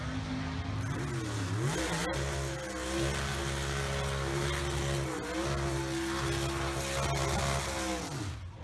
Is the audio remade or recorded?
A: recorded